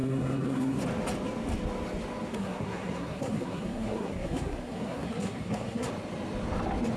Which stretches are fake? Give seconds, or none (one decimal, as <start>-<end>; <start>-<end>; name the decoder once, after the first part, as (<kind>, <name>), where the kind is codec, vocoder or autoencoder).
0.0-0.8 (codec, SNAC); 2.3-5.9